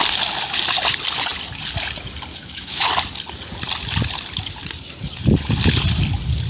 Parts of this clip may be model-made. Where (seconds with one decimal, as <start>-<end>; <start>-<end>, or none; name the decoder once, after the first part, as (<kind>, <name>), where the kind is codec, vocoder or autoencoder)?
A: 2.3-2.9 (autoencoder, DAC-VAE)